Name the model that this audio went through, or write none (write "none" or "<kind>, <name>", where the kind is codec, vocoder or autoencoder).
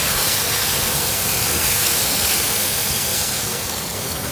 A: codec, SNAC